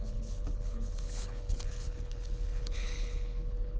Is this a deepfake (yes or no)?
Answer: yes